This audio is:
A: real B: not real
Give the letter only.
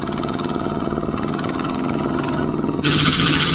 B